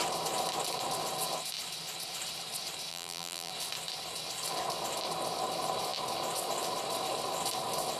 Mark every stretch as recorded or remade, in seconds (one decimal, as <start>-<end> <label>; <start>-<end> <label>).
0.0-2.9 recorded; 2.9-3.5 remade; 3.5-8.0 recorded

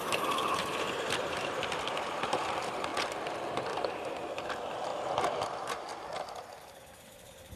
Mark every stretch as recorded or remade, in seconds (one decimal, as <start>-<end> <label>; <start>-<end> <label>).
0.0-2.9 remade; 2.9-4.4 recorded; 4.4-4.9 remade; 4.9-5.4 recorded; 5.4-5.9 remade; 5.9-7.0 recorded; 7.0-7.6 remade

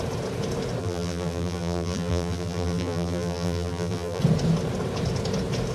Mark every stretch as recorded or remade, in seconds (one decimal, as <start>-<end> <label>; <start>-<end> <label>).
0.0-0.8 recorded; 0.8-4.2 remade; 4.2-5.7 recorded

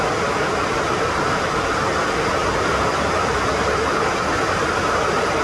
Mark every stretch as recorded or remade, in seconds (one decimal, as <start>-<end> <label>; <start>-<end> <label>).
0.0-5.4 recorded

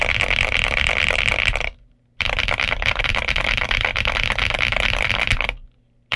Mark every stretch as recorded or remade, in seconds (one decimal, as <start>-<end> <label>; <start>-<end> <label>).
0.0-6.2 recorded

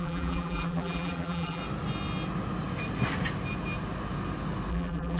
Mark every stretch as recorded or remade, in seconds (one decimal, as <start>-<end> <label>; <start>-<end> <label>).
0.0-1.6 remade; 1.6-4.7 recorded; 4.7-5.2 remade

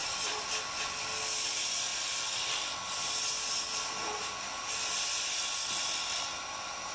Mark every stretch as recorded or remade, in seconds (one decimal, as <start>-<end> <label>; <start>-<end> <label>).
0.0-1.1 remade; 1.1-6.9 recorded